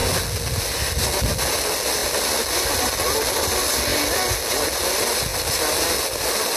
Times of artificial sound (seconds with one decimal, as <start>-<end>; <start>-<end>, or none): none